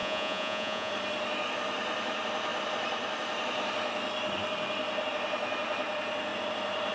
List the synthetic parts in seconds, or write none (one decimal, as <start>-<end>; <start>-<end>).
0.0-0.9